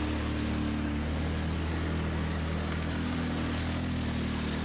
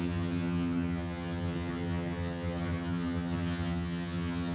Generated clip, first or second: second